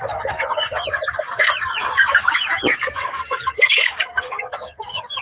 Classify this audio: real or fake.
fake